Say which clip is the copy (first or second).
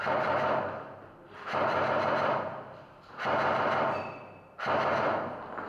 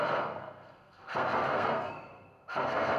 second